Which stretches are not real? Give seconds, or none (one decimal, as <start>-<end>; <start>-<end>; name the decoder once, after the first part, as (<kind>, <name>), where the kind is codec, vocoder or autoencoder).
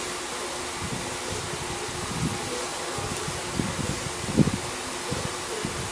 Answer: none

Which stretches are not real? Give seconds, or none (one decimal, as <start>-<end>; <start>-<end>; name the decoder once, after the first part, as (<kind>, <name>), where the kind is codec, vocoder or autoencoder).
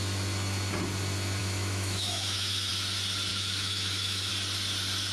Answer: 1.4-2.7 (autoencoder, DAC-VAE); 3.3-4.3